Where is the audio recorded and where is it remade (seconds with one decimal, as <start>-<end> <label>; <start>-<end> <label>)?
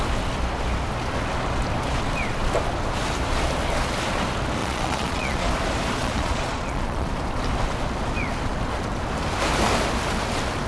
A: 0.0-4.6 recorded; 4.6-5.5 remade; 5.5-6.0 recorded; 6.0-7.1 remade; 7.1-10.7 recorded